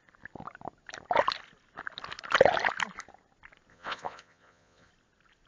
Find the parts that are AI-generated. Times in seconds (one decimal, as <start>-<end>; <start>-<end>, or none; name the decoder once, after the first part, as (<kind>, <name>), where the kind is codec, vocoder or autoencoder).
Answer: 3.7-4.9 (vocoder, Vocos)